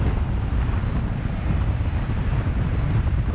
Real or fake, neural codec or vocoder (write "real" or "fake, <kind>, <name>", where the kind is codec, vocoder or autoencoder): real